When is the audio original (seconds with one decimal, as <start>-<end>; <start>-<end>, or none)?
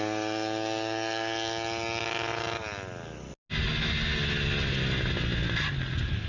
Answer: 0.0-6.3